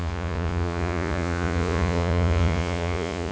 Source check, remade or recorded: remade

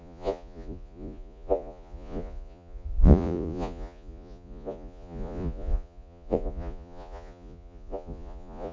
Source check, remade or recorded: remade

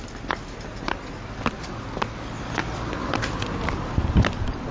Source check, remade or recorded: recorded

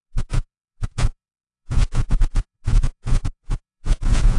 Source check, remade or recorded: remade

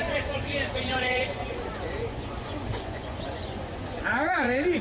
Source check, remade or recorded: remade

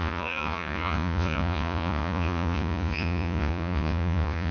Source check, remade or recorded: remade